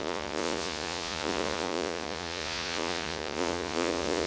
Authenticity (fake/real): fake